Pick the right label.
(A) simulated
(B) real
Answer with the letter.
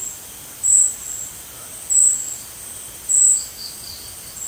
B